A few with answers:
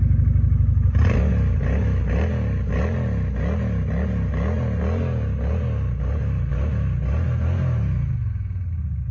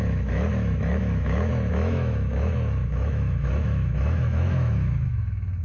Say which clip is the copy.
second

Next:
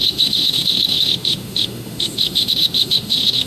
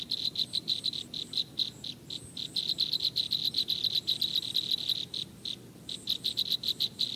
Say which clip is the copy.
first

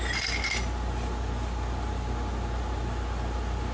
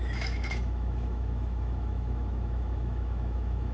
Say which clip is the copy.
second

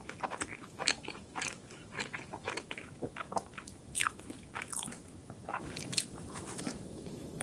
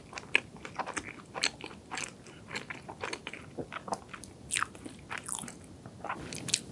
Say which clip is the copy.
first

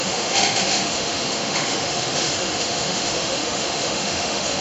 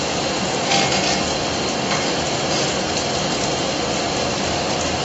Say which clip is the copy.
first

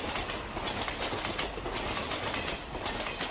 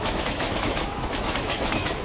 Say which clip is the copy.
second